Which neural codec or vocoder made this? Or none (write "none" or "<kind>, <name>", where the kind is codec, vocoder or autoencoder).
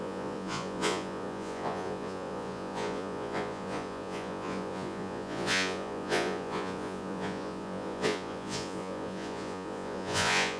vocoder, Vocos